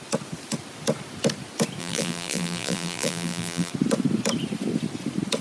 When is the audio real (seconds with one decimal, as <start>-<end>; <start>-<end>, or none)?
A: 0.0-1.8; 3.7-5.4